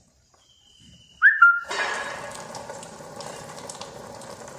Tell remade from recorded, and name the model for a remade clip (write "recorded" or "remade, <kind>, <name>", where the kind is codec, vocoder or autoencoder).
remade, vocoder, BigVGAN v2